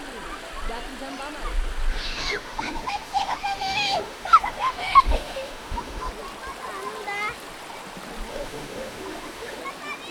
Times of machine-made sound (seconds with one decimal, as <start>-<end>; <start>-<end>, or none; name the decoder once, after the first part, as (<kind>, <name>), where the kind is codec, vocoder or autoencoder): 1.9-6.1 (autoencoder, DAC-VAE); 8.3-9.6